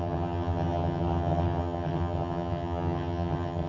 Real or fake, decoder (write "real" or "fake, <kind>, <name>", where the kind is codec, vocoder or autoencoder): fake, vocoder, HiFi-GAN